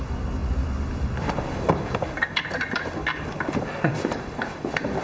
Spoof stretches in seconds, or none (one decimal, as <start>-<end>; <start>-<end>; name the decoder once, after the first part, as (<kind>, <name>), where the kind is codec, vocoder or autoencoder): none